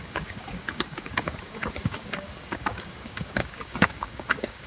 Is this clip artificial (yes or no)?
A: yes